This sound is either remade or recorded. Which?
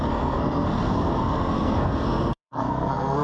remade